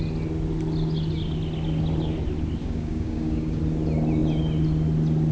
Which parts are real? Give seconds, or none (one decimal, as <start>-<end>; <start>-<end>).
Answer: 0.0-2.6; 3.6-5.3